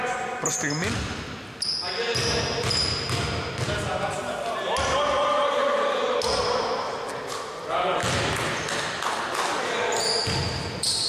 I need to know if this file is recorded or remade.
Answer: recorded